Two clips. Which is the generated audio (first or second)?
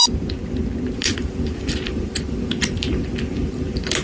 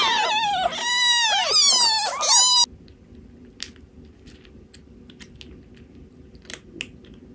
first